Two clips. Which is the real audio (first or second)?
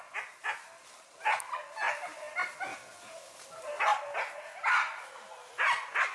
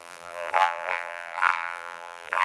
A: first